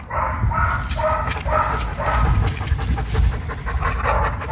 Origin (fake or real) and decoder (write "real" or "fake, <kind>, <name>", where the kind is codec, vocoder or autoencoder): real